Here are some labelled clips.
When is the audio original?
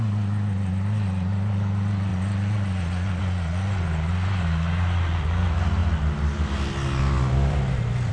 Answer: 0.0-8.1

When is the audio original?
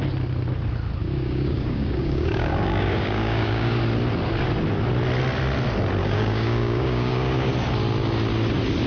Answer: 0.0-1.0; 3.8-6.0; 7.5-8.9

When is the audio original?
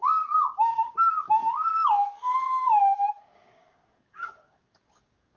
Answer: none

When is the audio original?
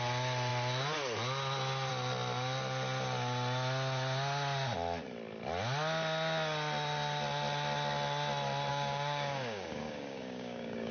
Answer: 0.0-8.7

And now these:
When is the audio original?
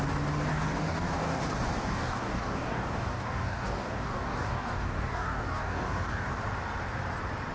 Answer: 0.0-0.5; 1.4-1.8; 6.3-7.5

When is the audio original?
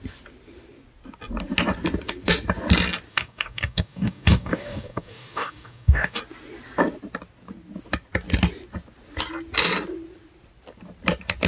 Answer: 0.0-3.1; 6.2-11.5